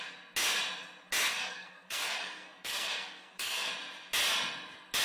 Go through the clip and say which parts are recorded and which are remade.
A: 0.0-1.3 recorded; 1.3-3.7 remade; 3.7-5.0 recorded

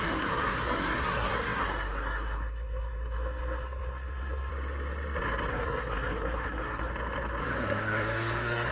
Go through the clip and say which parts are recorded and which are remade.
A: 0.0-4.5 remade; 4.5-5.5 recorded; 5.5-6.9 remade; 6.9-7.4 recorded; 7.4-8.7 remade

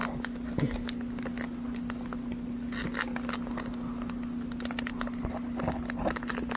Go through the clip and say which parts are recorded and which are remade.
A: 0.0-6.6 recorded

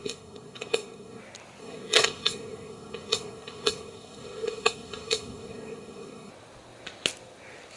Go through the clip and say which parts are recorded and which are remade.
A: 0.0-1.2 remade; 1.2-1.6 recorded; 1.6-6.3 remade; 6.3-7.8 recorded

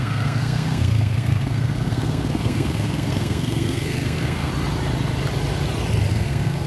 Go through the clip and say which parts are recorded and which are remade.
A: 0.0-4.5 remade; 4.5-6.1 recorded; 6.1-6.7 remade